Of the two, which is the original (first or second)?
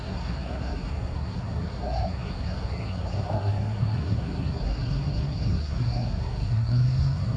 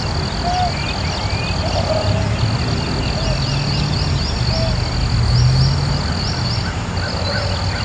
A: second